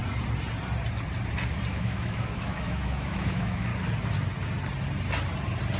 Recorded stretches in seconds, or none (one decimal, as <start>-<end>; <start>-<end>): 0.0-1.7; 3.7-5.8

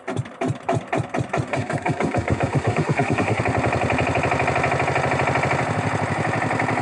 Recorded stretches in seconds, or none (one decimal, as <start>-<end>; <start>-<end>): 0.0-1.5; 3.4-6.8

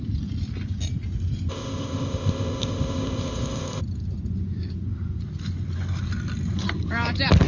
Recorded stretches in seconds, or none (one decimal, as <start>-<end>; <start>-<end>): 0.0-1.5; 3.8-7.5

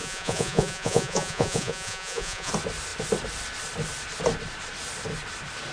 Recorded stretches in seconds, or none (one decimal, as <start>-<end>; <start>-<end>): 2.5-5.7

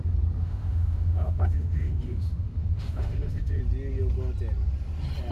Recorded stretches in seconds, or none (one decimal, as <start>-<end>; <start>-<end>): 0.0-0.4; 3.6-5.3